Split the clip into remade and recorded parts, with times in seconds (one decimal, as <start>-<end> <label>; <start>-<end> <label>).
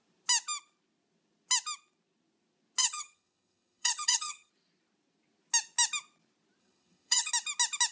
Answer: 0.0-2.8 recorded; 2.8-4.5 remade; 4.5-6.6 recorded; 6.6-7.3 remade; 7.3-7.9 recorded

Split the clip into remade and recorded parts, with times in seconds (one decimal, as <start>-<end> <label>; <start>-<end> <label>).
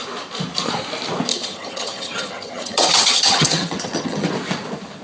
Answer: 0.0-1.3 recorded; 1.3-4.3 remade; 4.3-5.0 recorded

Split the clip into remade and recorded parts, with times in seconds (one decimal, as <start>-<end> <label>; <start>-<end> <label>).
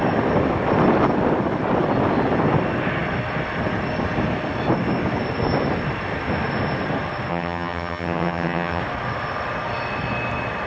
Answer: 0.0-7.3 recorded; 7.3-8.8 remade; 8.8-10.7 recorded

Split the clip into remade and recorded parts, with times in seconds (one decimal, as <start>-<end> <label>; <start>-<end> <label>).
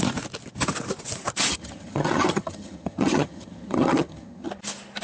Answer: 0.0-1.5 recorded; 1.5-4.5 remade; 4.5-5.0 recorded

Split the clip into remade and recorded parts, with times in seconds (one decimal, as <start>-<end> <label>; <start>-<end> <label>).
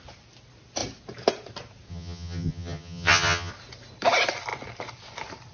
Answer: 0.0-1.9 recorded; 1.9-3.5 remade; 3.5-5.5 recorded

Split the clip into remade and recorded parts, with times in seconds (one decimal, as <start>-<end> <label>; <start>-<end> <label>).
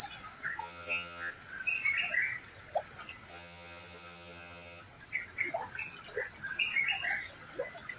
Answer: 0.0-0.6 recorded; 0.6-1.3 remade; 1.3-3.3 recorded; 3.3-4.8 remade; 4.8-8.0 recorded